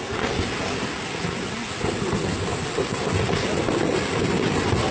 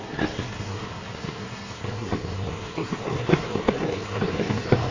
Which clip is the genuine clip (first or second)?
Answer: first